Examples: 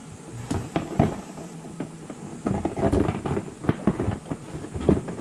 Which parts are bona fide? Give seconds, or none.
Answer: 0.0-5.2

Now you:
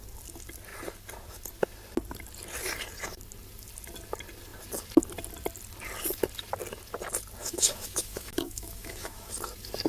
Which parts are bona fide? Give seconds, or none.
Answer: 0.0-7.4; 9.3-9.9

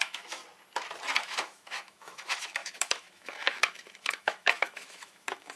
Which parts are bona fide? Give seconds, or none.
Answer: 0.4-1.2